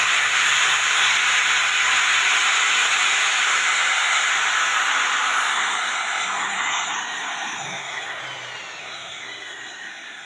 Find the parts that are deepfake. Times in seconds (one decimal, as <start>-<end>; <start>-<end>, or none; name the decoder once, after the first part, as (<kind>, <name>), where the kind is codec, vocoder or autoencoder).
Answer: 0.0-1.1 (codec, SNAC); 3.4-4.3; 5.4-8.2; 8.8-10.3